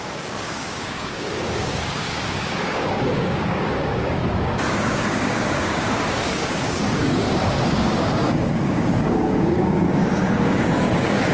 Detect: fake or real fake